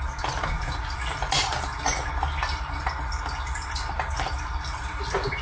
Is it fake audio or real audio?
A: real